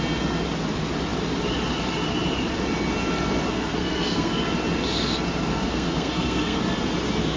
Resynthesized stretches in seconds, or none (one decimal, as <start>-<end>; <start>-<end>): 3.5-4.4; 5.5-6.6